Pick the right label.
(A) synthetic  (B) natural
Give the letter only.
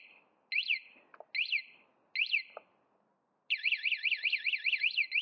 B